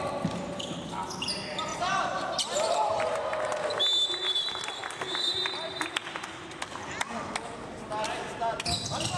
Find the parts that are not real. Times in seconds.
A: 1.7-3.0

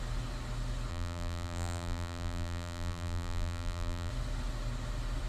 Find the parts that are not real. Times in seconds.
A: 0.9-4.1

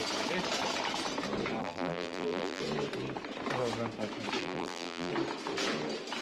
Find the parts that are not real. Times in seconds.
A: 1.6-2.6; 4.4-5.1

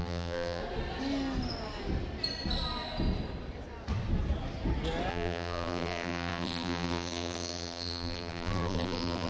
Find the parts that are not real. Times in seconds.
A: 0.0-0.6; 5.1-9.3

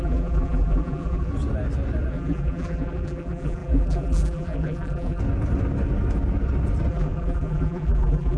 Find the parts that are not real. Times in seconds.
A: 0.0-1.3; 2.1-5.2; 6.9-8.4

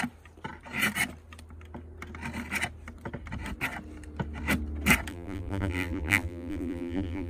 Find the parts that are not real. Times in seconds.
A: 5.1-7.3